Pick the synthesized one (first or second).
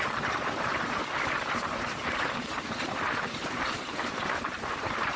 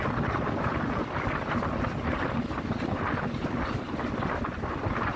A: first